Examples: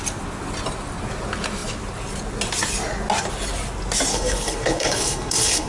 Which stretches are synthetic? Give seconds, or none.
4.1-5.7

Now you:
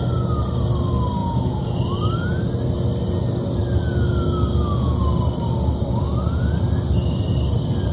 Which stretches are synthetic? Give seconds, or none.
1.2-1.8